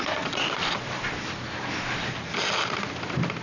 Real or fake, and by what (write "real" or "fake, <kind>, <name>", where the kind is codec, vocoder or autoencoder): real